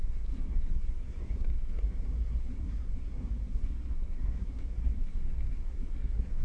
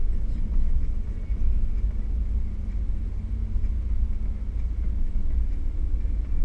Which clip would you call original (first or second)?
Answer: second